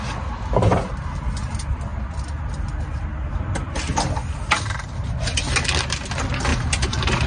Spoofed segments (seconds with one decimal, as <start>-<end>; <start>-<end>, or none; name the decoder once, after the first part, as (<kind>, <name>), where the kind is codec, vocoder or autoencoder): 6.5-7.3 (vocoder, BigVGAN v2)